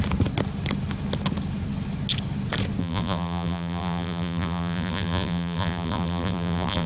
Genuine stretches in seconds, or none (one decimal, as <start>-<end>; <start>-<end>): 0.0-2.8